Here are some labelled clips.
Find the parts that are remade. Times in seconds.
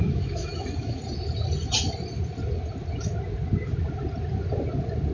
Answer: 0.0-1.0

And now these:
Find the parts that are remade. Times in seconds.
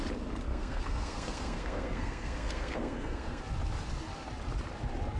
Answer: 0.5-3.4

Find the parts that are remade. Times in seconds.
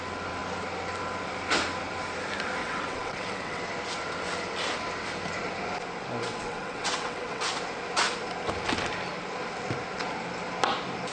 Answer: 2.6-3.6; 6.3-7.4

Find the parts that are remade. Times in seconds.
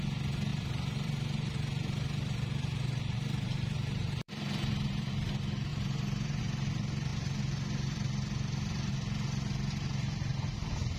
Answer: 0.5-5.1; 5.7-6.4